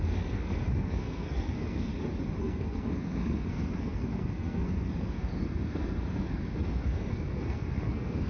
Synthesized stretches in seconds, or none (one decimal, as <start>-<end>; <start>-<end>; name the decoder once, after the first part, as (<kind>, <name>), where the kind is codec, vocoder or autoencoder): 0.0-1.9 (codec, SNAC); 2.4-8.3